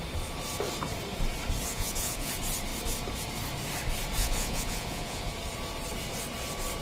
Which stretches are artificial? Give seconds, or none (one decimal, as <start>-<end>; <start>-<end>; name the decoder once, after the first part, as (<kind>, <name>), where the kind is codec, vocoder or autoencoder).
1.7-2.3 (vocoder, Vocos); 4.2-5.3